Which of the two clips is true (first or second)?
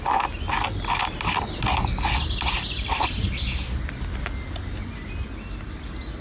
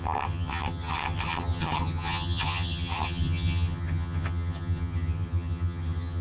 first